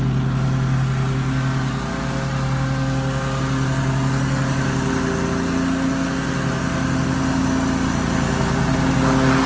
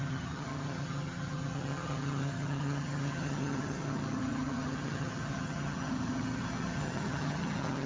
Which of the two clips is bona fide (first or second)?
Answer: first